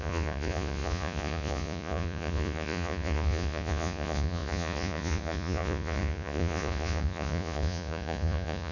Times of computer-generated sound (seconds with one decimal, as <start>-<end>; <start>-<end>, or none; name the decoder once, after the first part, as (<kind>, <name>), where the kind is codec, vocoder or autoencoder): 0.0-8.7 (vocoder, Vocos)